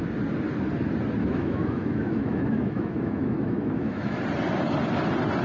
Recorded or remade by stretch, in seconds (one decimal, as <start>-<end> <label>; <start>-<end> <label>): 0.0-1.2 recorded; 1.2-4.2 remade; 4.2-5.4 recorded